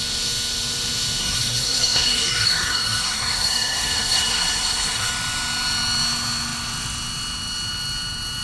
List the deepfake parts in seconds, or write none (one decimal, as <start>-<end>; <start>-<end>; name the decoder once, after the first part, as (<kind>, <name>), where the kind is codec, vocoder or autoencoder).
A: 1.2-5.1 (codec, SNAC)